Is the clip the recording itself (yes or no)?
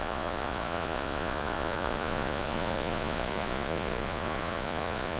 no